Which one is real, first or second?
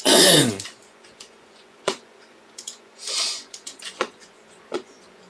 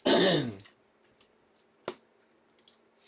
second